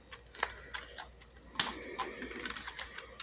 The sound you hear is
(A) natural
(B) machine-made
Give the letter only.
A